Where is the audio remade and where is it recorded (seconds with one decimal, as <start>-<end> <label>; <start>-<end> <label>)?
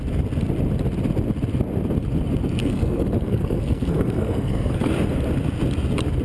0.0-2.6 recorded; 2.6-4.9 remade; 4.9-6.2 recorded